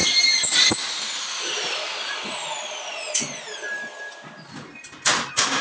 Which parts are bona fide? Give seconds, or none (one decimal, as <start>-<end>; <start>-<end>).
0.0-5.6